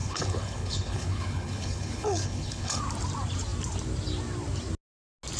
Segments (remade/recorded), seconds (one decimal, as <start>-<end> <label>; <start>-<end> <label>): 0.0-2.8 remade; 2.8-5.4 recorded